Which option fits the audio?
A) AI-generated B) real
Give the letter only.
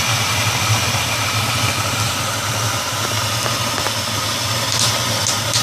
B